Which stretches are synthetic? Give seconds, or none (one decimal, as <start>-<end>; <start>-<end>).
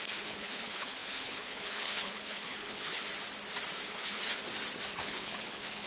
0.0-3.0; 3.9-4.4; 4.9-5.9